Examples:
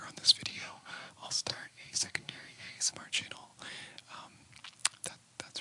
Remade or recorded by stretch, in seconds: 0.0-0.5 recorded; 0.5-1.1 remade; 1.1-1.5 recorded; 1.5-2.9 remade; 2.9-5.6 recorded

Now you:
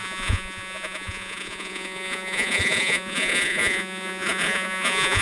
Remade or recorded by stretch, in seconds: 0.0-5.2 remade

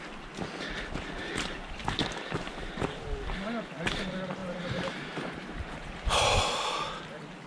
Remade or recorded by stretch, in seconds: 0.0-1.2 recorded; 1.2-1.8 remade; 1.8-4.4 recorded; 4.4-6.4 remade; 6.4-7.5 recorded

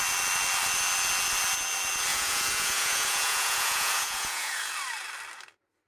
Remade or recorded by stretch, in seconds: 0.0-2.1 recorded; 2.1-4.7 remade; 4.7-5.9 recorded

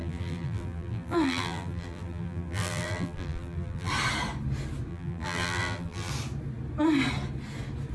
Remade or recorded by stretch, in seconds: 0.0-3.9 remade; 3.9-4.9 recorded; 4.9-6.1 remade; 6.1-7.9 recorded